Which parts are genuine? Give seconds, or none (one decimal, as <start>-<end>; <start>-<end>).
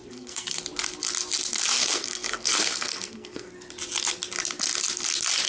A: 0.6-1.8; 3.5-5.5